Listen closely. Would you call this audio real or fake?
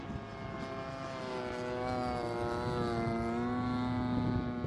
real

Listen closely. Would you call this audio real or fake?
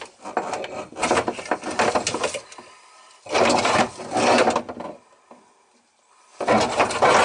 real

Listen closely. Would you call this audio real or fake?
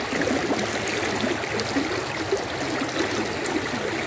real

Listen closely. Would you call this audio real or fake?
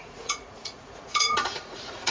fake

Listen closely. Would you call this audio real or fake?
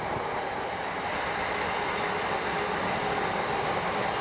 real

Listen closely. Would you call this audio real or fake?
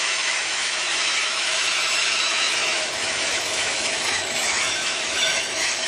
fake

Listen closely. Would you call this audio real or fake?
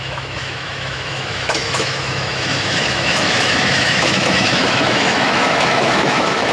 fake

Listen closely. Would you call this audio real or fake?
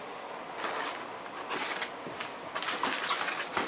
real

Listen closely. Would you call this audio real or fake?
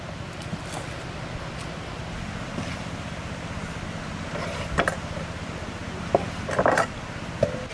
real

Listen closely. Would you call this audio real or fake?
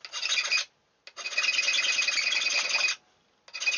real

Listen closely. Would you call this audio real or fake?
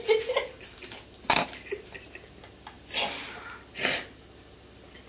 real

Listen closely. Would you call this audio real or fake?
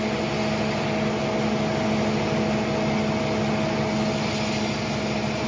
real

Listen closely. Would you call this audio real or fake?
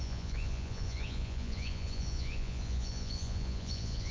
fake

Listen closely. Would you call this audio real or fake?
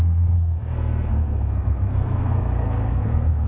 fake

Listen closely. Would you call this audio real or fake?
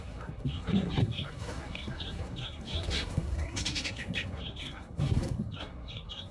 fake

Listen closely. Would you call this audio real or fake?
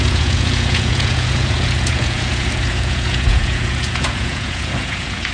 fake